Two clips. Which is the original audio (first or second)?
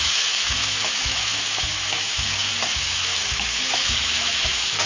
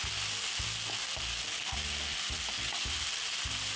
second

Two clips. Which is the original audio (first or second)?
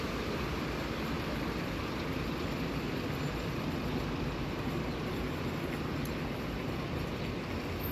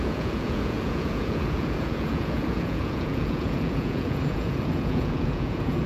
first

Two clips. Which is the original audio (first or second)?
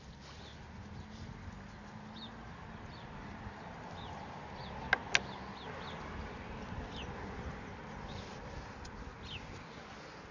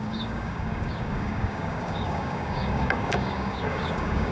first